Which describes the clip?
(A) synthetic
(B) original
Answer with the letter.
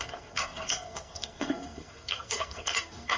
A